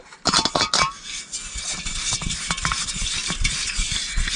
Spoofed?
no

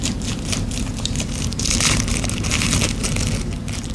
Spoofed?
yes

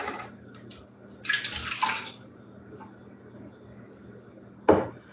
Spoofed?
no